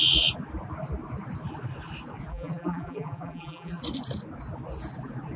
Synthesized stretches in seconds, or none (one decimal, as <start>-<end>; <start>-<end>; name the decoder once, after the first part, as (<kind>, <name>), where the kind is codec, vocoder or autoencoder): 2.3-3.8 (vocoder, BigVGAN v2)